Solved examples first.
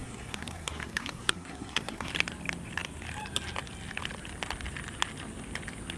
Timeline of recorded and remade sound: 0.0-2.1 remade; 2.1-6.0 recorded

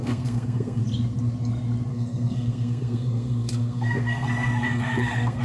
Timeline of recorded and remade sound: 0.0-0.8 remade; 0.8-1.9 recorded; 1.9-5.4 remade

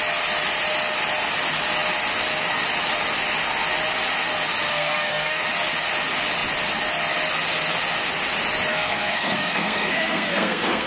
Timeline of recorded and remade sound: 0.0-4.7 recorded; 4.7-5.4 remade; 5.4-8.7 recorded; 8.7-10.9 remade

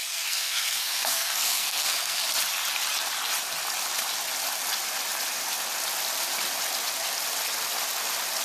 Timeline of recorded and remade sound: 0.0-2.2 remade; 2.2-8.4 recorded

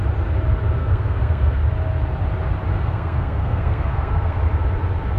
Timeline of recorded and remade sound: 0.0-0.8 recorded; 0.8-1.6 remade; 1.6-2.7 recorded; 2.7-4.4 remade; 4.4-5.2 recorded

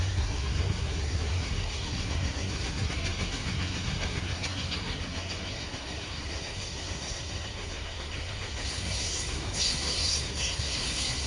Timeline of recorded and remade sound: 0.0-11.3 remade

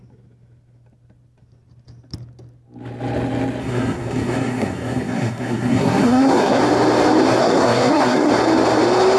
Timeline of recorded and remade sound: 0.0-3.6 recorded; 3.6-6.6 remade; 6.6-7.4 recorded; 7.4-8.3 remade; 8.3-9.2 recorded